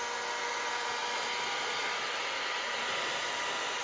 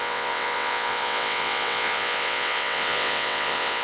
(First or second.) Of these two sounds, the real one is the first